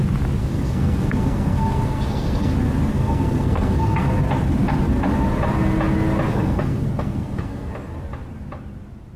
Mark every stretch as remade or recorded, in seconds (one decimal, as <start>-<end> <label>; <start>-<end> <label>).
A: 0.0-0.4 recorded; 0.4-2.5 remade; 2.5-2.9 recorded; 2.9-4.1 remade; 4.1-6.3 recorded; 6.3-7.7 remade; 7.7-9.2 recorded